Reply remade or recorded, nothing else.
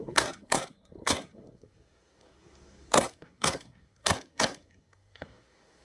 remade